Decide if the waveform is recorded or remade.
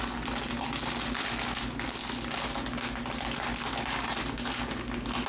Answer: recorded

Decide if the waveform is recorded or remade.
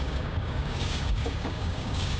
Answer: remade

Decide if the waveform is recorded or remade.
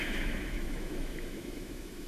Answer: remade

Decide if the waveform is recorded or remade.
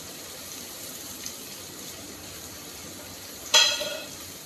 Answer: remade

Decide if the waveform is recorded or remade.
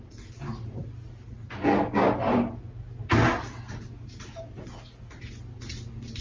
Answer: recorded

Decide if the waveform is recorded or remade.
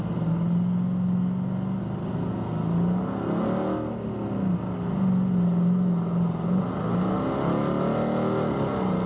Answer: recorded